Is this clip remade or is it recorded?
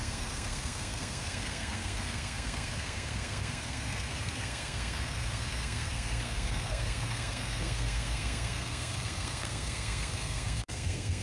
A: remade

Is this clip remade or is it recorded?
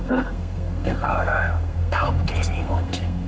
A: remade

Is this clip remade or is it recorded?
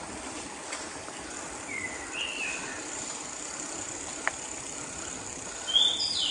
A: recorded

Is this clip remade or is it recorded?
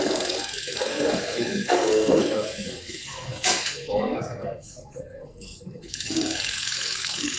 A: remade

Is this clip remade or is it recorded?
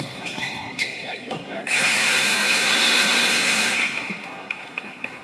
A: remade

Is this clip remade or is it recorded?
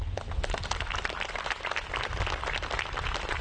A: recorded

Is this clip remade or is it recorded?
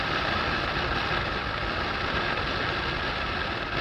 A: recorded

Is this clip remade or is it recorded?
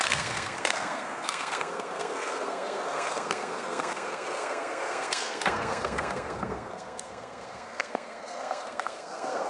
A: remade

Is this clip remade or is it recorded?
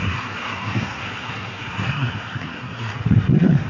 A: remade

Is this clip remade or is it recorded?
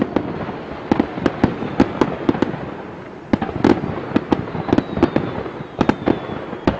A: recorded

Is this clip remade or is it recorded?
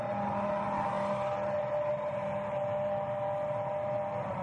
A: recorded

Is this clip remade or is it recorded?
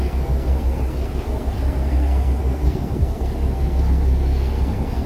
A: remade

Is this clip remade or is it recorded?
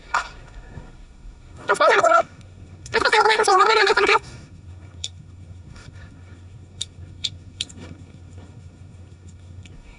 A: remade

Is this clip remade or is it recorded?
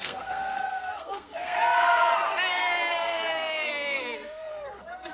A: remade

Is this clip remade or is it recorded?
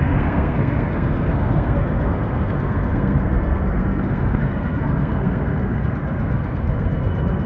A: remade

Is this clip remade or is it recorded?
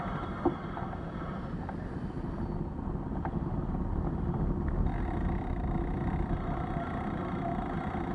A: recorded